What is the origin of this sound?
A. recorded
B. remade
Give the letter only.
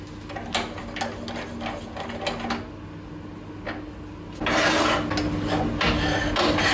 A